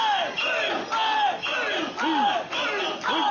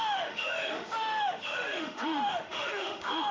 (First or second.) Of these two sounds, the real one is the first